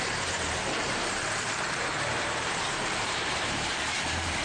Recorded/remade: remade